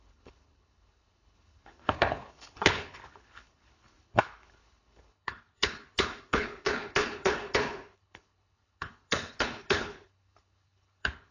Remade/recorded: remade